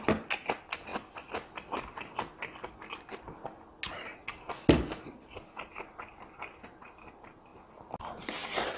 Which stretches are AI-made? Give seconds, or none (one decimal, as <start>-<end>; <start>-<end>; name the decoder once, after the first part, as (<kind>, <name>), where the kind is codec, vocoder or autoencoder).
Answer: none